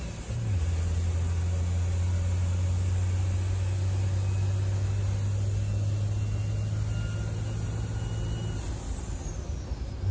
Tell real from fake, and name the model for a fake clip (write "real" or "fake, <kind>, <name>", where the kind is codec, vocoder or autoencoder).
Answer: real